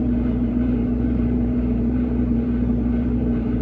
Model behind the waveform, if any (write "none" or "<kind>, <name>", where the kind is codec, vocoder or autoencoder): vocoder, BigVGAN v2